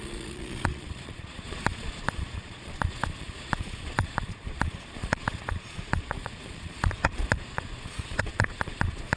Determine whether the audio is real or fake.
fake